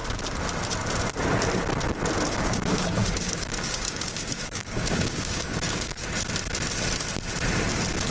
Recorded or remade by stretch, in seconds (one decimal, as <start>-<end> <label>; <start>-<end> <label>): 0.0-2.3 recorded; 2.3-6.0 remade; 6.0-8.1 recorded